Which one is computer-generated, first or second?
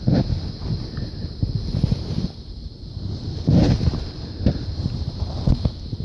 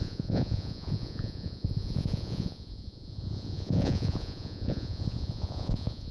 second